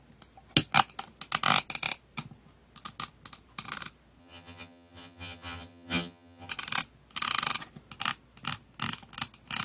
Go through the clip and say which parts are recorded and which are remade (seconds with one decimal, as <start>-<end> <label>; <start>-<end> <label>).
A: 0.0-4.2 recorded; 4.2-6.5 remade; 6.5-9.6 recorded

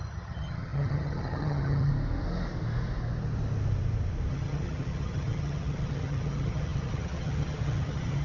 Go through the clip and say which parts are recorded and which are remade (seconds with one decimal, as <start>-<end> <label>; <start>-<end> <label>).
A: 0.0-1.9 remade; 1.9-4.3 recorded; 4.3-8.2 remade

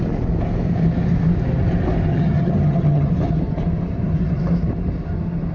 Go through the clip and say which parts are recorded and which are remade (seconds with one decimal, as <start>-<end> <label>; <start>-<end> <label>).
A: 0.0-2.1 recorded; 2.1-3.1 remade; 3.1-5.5 recorded

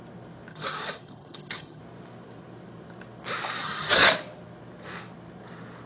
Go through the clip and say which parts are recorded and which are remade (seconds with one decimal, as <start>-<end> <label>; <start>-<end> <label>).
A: 0.0-0.5 recorded; 0.5-1.8 remade; 1.8-3.6 recorded; 3.6-4.1 remade; 4.1-5.9 recorded